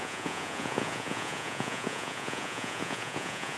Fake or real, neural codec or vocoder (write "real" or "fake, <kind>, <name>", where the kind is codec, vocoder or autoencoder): fake, vocoder, Vocos